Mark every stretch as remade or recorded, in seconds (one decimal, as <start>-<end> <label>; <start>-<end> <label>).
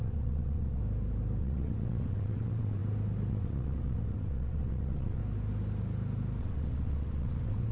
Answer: 0.0-0.8 remade; 0.8-1.4 recorded; 1.4-2.8 remade; 2.8-3.3 recorded; 3.3-5.2 remade; 5.2-6.4 recorded; 6.4-7.7 remade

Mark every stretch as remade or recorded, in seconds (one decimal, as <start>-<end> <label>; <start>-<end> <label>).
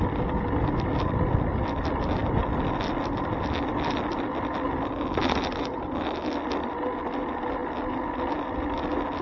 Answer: 0.0-9.2 recorded